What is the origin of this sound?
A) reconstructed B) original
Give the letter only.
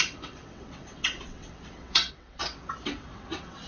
A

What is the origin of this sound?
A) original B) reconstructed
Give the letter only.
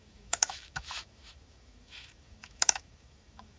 B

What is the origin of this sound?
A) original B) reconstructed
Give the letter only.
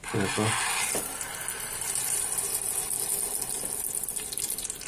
A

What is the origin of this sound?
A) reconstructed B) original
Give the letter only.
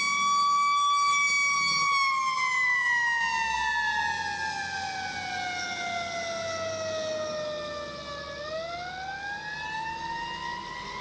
B